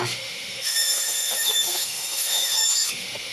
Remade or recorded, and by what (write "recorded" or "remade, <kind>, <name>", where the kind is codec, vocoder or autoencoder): remade, autoencoder, DAC-VAE